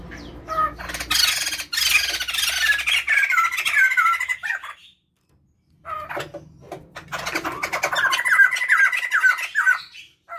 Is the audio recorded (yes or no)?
yes